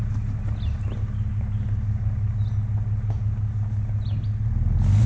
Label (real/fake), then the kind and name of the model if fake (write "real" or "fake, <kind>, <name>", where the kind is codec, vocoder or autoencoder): real